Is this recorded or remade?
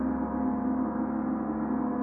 recorded